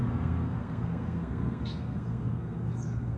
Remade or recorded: remade